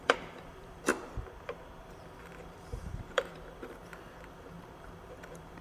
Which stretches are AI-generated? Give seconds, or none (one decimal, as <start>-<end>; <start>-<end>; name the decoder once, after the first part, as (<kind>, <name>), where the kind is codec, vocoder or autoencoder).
0.0-0.9 (vocoder, BigVGAN v2); 1.9-3.9; 4.4-5.6